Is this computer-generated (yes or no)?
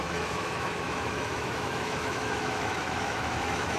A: yes